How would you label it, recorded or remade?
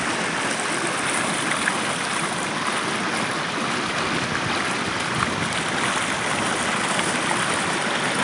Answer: recorded